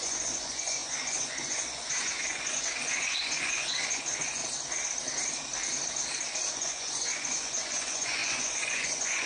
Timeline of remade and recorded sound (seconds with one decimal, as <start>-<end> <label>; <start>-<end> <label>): 0.0-4.4 remade; 4.4-6.5 recorded; 6.5-9.3 remade